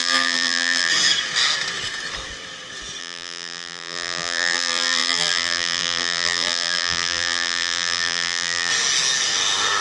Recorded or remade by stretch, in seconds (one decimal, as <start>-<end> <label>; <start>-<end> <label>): 0.0-0.9 remade; 0.9-3.0 recorded; 3.0-8.7 remade; 8.7-9.8 recorded